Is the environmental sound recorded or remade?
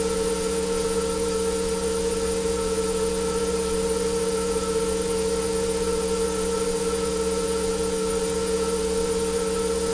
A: remade